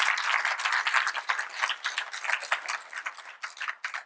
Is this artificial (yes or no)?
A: no